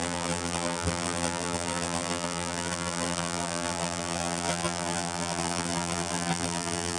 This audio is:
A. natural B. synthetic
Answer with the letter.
B